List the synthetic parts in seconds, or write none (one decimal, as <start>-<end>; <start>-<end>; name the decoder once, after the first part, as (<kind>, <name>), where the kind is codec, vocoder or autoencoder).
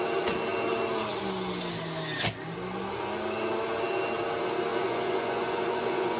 4.7-6.2 (vocoder, Vocos)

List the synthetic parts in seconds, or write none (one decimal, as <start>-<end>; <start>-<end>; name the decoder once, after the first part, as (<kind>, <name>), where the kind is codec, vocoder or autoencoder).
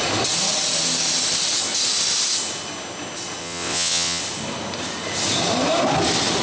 3.4-4.2 (vocoder, WaveNeXt)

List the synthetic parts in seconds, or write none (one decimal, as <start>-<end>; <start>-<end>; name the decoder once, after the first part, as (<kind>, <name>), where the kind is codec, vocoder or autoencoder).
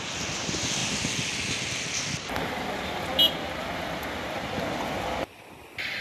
none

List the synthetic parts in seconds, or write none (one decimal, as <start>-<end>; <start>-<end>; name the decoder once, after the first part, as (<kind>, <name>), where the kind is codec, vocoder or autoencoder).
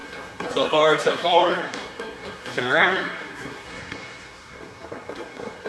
0.0-5.7 (codec, SNAC)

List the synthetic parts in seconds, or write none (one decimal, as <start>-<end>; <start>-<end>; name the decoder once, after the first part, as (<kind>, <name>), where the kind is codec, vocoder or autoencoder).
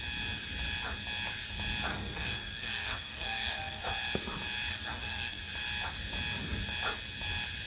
1.9-3.8 (codec, SNAC); 4.7-5.4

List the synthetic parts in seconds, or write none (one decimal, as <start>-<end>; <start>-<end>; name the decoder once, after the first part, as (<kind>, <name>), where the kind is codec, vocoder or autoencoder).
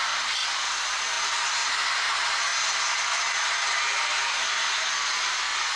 none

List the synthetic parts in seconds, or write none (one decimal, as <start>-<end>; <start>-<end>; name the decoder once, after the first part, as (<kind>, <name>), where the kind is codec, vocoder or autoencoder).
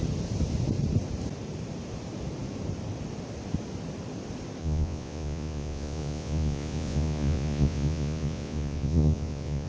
4.6-9.7 (vocoder, Vocos)